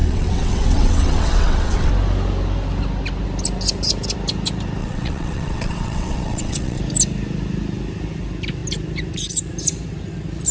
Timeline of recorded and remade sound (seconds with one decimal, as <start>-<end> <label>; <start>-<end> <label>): 0.0-1.9 remade; 1.9-4.8 recorded; 4.8-6.8 remade; 6.8-10.5 recorded